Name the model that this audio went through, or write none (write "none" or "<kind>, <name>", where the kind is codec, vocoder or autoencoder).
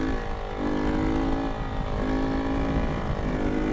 none